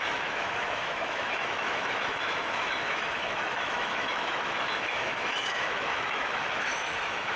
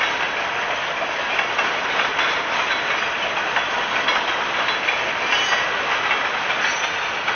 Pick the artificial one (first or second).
first